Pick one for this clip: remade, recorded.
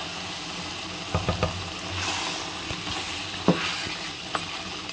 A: recorded